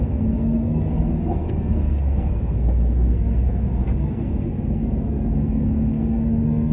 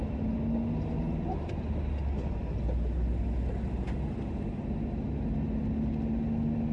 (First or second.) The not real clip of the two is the first